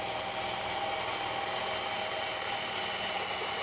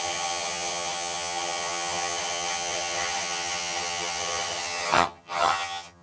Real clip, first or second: first